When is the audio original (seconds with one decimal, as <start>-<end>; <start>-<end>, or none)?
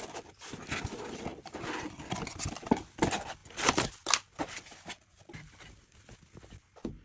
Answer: 0.0-7.0